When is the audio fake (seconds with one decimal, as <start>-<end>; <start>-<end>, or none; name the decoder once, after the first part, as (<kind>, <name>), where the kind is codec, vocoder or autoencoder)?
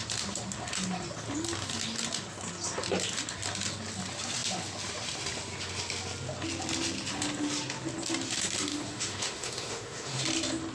8.7-10.2 (autoencoder, DAC-VAE)